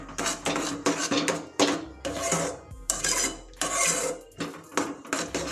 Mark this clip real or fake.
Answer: real